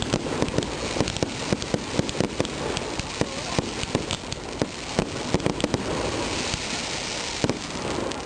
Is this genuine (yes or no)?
yes